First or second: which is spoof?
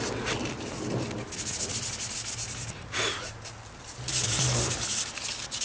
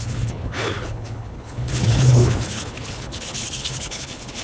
second